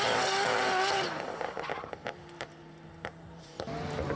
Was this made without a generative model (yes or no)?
yes